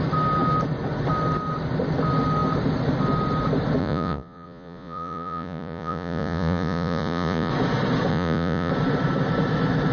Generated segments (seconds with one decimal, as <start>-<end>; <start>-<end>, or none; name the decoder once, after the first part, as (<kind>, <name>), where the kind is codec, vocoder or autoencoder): 3.8-7.5 (vocoder, Vocos); 8.1-8.7